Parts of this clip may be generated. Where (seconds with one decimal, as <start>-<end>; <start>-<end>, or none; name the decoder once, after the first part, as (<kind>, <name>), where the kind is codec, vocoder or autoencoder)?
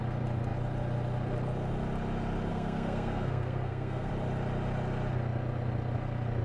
2.5-4.1 (codec, SNAC)